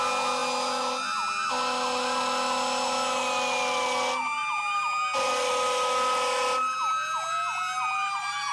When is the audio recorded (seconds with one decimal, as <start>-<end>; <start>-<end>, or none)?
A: 0.0-8.5